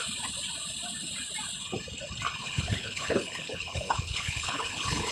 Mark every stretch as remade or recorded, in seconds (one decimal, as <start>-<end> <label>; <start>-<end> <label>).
0.0-2.4 recorded; 2.4-5.1 remade